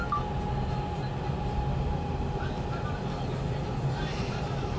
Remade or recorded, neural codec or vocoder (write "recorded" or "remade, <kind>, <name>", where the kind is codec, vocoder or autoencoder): recorded